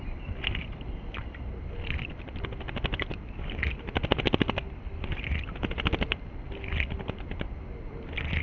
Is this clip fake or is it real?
real